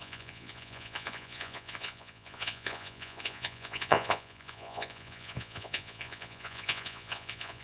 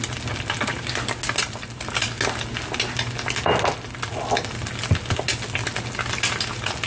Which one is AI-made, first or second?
first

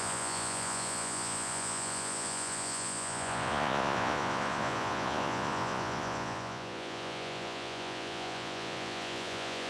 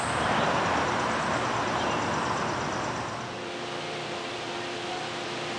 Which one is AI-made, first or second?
first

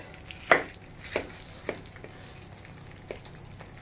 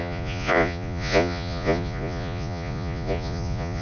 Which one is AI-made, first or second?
second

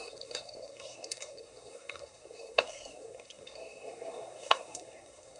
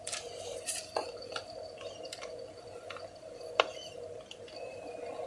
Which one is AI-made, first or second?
first